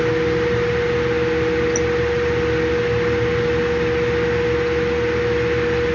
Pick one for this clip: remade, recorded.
recorded